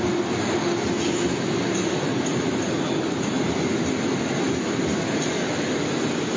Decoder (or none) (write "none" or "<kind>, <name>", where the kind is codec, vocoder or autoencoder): none